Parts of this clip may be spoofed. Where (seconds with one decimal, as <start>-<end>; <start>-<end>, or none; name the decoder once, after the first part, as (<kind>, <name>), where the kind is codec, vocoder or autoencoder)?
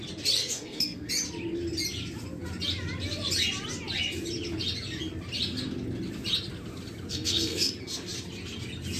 0.4-1.1 (codec, SNAC); 7.1-7.7